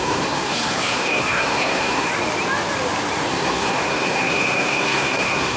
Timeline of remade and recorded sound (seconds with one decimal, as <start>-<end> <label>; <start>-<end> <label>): 0.0-2.1 remade; 2.1-3.3 recorded; 3.3-5.6 remade